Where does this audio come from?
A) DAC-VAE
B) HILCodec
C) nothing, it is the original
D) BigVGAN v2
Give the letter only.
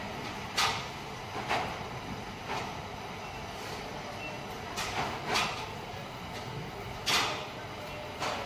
C